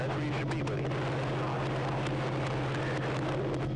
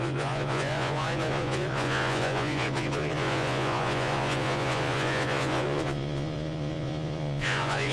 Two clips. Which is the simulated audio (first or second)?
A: second